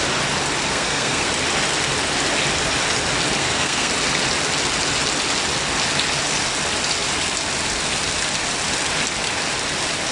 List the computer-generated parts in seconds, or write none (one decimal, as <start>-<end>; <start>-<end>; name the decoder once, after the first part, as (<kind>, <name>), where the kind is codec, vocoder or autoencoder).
0.7-1.3 (codec, SNAC); 3.4-3.9